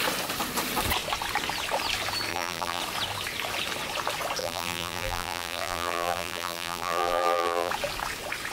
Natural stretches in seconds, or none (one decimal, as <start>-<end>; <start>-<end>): 0.0-2.3; 2.8-4.4; 7.7-8.5